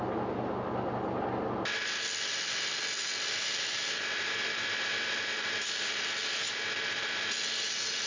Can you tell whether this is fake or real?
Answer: real